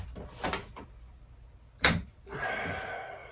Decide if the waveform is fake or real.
real